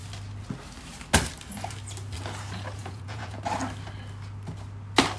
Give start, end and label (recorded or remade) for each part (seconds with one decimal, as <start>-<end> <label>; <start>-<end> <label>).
0.0-2.8 recorded; 2.8-3.4 remade; 3.4-5.2 recorded

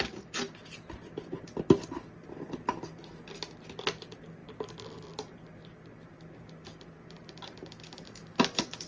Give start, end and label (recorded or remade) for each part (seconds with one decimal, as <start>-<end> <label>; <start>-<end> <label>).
0.0-8.9 recorded